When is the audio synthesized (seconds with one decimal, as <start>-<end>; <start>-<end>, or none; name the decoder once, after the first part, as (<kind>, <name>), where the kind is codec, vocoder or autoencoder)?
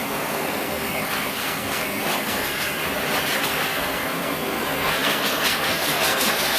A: 0.0-2.8 (codec, SNAC); 3.4-6.6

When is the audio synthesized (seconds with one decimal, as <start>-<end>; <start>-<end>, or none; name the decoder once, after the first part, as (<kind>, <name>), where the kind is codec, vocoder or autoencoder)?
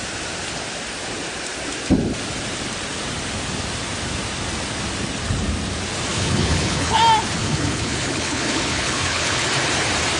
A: 6.1-7.0 (codec, HILCodec); 7.4-9.5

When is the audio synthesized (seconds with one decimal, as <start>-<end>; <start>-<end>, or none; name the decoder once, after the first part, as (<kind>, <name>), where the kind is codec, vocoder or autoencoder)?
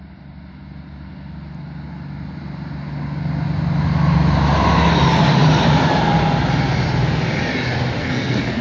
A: 8.0-8.6 (codec, SNAC)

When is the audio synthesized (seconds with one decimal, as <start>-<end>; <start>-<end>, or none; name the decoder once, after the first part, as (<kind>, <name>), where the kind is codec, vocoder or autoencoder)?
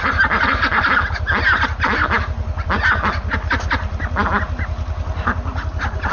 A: none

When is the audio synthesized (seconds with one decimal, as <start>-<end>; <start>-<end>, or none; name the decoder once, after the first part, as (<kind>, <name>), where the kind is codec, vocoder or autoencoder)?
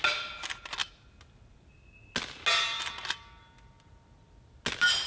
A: none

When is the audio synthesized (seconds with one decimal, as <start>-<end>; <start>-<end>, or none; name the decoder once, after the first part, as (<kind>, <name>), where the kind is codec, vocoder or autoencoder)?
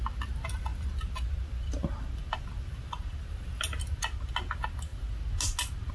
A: none